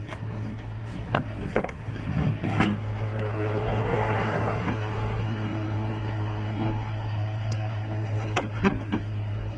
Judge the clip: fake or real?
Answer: fake